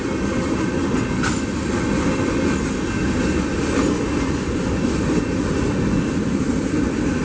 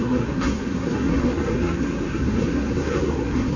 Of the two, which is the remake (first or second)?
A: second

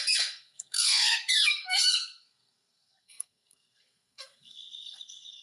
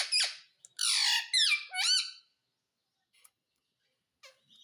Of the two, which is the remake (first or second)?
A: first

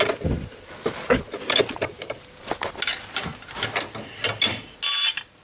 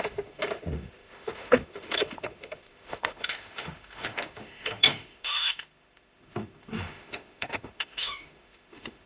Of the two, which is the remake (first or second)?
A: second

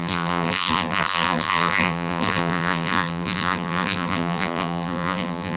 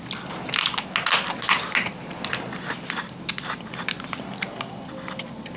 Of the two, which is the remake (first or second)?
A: first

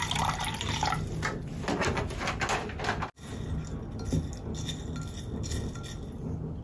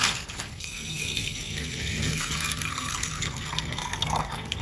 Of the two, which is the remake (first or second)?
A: second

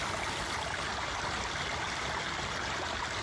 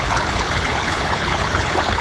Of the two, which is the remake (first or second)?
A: second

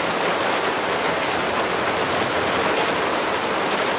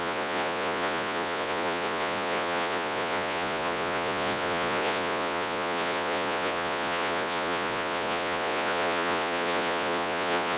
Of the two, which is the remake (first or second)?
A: second